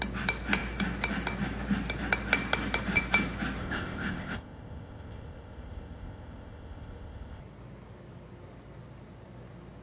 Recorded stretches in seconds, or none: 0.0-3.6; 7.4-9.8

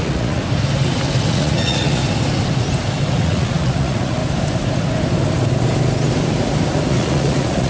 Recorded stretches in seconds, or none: 0.4-1.3; 2.0-3.1; 4.2-6.9

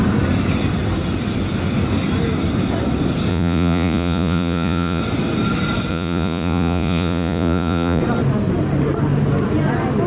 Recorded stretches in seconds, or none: 0.0-3.3; 5.0-5.9; 8.0-10.1

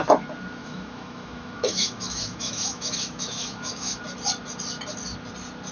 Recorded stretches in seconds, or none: 0.0-0.6; 4.0-5.7